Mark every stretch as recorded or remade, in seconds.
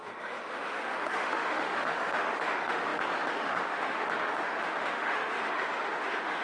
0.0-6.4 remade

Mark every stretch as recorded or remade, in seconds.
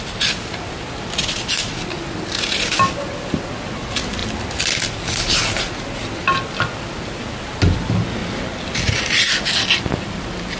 0.0-10.6 recorded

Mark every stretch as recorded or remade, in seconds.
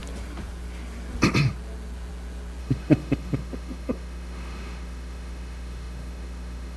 0.0-2.6 recorded; 2.6-6.8 remade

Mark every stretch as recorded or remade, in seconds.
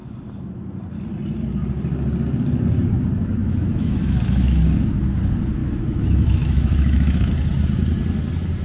0.0-3.4 recorded; 3.4-4.6 remade; 4.6-5.6 recorded; 5.6-7.3 remade; 7.3-8.6 recorded